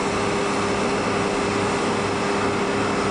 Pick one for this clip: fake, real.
real